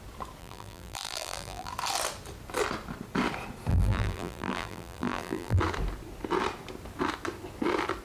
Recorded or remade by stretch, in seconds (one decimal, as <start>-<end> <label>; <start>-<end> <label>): 0.0-0.4 recorded; 0.4-1.7 remade; 1.7-3.7 recorded; 3.7-5.6 remade; 5.6-8.0 recorded